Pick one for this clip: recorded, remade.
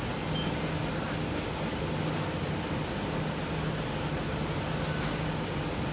recorded